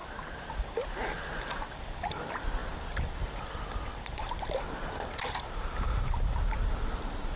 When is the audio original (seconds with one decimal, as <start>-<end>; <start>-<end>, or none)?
0.0-7.4